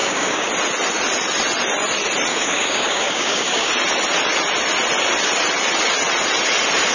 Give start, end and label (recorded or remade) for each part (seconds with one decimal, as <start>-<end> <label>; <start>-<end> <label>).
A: 0.0-0.5 remade; 0.5-2.3 recorded; 2.3-3.7 remade; 3.7-6.9 recorded